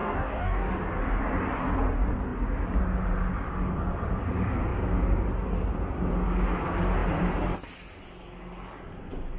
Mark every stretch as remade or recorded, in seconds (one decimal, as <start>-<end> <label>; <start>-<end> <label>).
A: 0.0-0.7 remade; 0.7-9.4 recorded